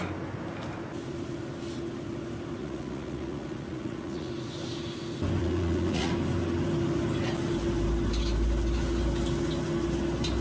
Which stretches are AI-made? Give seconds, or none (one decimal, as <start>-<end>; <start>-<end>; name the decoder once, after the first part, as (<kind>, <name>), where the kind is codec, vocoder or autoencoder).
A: 2.6-4.3 (vocoder, Vocos); 5.4-6.1